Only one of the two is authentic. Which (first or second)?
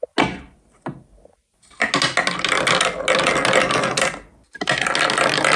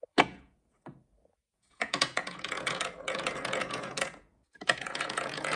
first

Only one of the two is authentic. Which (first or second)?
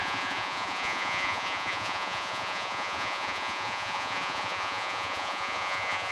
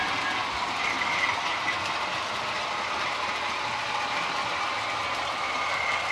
second